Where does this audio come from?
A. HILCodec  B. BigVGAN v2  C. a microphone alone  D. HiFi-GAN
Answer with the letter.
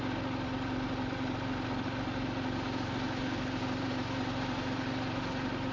C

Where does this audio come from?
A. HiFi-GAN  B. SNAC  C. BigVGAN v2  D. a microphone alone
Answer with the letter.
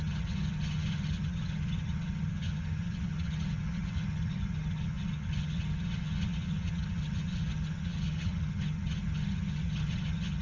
A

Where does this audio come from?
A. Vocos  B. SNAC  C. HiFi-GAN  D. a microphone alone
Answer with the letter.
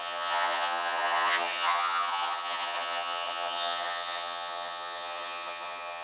C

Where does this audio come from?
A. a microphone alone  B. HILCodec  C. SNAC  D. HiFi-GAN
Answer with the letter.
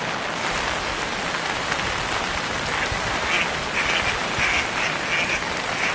A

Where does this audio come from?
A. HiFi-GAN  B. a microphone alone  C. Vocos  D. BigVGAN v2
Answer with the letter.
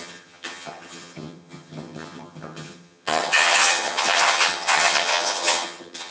A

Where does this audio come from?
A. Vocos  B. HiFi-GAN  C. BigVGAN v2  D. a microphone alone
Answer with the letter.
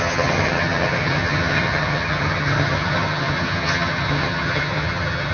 B